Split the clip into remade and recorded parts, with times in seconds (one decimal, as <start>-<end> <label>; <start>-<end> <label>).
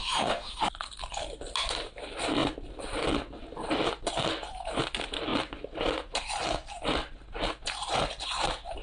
0.0-0.6 remade; 0.6-8.8 recorded